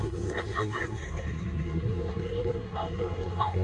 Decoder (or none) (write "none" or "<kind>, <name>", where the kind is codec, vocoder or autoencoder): codec, SNAC